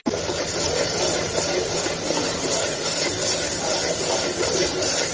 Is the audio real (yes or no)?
yes